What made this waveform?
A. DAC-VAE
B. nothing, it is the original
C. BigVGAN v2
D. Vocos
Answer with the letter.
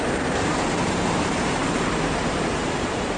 C